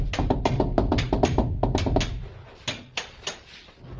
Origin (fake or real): real